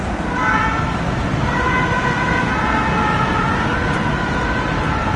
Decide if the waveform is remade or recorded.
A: recorded